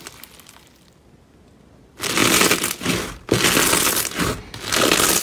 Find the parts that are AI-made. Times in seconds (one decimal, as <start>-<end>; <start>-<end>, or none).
none